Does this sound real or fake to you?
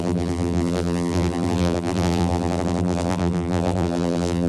fake